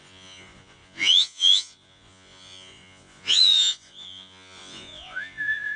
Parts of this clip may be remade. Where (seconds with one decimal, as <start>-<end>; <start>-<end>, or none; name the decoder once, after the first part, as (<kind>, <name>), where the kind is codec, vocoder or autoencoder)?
0.0-5.8 (vocoder, Vocos)